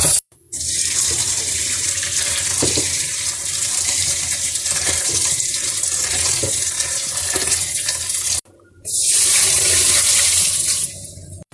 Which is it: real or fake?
fake